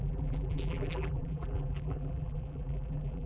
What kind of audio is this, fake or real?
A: fake